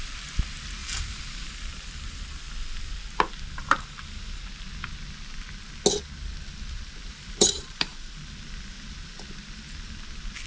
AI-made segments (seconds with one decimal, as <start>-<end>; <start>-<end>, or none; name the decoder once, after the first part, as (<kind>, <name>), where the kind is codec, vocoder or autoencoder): 0.8-2.2 (vocoder, BigVGAN v2); 3.6-4.4; 7.1-8.2